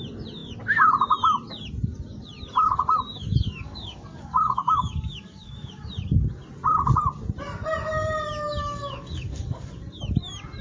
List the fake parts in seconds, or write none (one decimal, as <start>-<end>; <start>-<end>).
3.1-5.7; 8.6-9.7